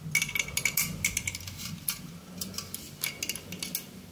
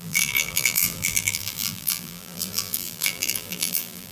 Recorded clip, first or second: first